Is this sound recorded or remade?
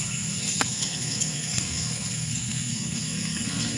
remade